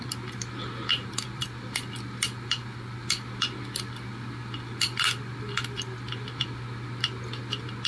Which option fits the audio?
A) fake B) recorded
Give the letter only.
B